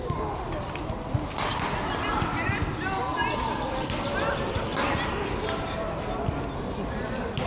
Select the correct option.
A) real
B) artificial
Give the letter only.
A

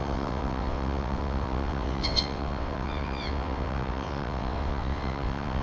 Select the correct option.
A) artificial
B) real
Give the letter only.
A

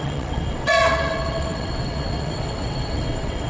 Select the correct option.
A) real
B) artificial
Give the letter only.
B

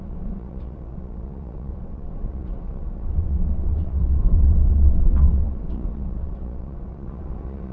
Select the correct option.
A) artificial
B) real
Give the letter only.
A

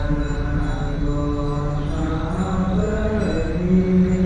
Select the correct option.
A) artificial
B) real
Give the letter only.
B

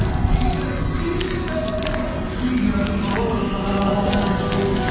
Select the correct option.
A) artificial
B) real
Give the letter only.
B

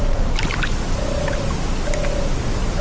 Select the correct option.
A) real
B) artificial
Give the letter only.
A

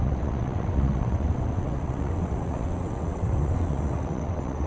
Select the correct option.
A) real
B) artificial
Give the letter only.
B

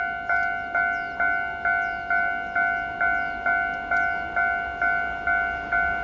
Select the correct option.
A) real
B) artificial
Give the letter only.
A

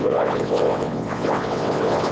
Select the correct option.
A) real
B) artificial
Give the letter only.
B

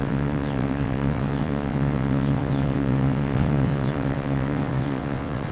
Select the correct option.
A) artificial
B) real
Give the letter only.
A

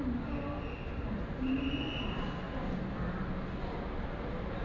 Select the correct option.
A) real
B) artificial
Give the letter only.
A